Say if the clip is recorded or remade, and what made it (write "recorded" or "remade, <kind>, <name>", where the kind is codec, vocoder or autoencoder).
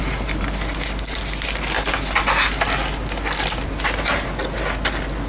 recorded